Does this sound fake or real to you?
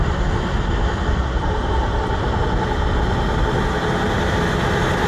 real